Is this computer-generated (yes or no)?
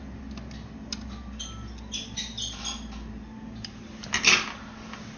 no